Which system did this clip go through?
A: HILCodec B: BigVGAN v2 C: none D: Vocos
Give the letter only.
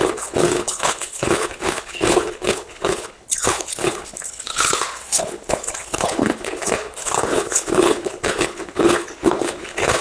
A